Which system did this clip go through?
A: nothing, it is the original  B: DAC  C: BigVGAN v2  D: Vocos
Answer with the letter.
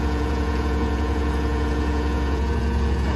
D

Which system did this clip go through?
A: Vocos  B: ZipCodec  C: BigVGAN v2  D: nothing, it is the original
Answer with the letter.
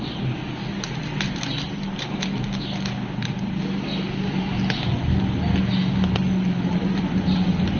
D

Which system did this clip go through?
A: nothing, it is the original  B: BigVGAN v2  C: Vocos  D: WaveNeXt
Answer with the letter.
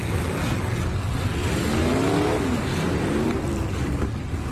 A